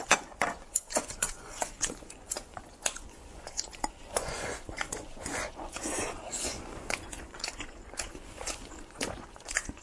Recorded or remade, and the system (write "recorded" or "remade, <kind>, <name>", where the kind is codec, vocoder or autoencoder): remade, vocoder, Vocos